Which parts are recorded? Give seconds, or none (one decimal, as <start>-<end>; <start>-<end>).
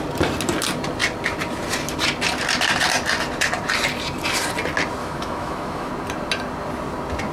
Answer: 0.0-5.0; 5.9-7.3